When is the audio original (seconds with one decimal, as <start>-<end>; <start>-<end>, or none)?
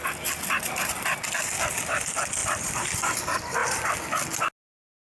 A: 0.0-2.4; 3.2-5.1